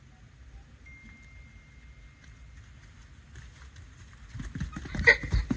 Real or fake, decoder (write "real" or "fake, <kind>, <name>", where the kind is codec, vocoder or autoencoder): real